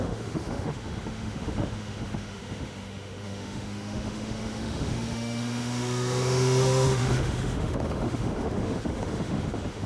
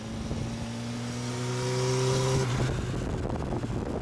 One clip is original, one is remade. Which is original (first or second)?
second